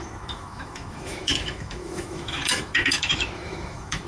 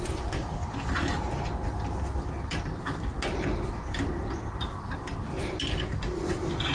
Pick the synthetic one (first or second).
first